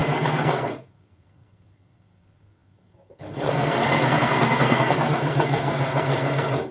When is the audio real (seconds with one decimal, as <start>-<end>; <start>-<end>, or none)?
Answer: none